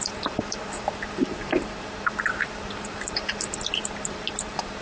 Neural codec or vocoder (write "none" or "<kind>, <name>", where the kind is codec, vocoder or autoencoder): vocoder, BigVGAN v2